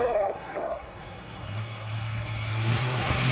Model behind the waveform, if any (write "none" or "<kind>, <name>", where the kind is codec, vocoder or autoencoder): codec, SNAC